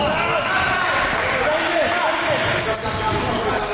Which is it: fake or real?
real